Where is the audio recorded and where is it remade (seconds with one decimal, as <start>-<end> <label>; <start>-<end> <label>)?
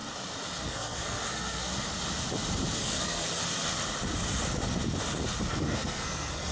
0.0-0.6 recorded; 0.6-1.7 remade; 1.7-2.8 recorded; 2.8-3.4 remade; 3.4-5.5 recorded; 5.5-6.5 remade